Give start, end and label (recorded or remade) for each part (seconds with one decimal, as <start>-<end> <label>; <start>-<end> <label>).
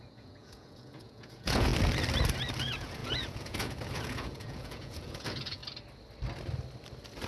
0.0-1.7 remade; 1.7-2.6 recorded; 2.6-5.6 remade; 5.6-7.3 recorded